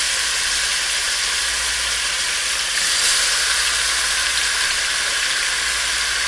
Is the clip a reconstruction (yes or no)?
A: no